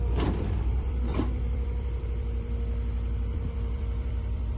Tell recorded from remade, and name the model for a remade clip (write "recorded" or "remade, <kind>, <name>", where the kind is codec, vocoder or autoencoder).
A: remade, vocoder, BigVGAN v2